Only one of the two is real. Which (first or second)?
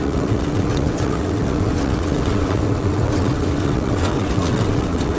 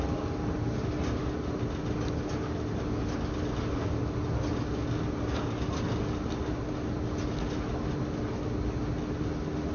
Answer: second